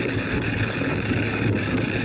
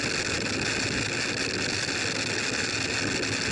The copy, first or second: first